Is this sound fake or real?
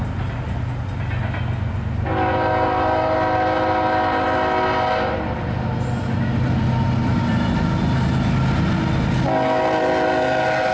real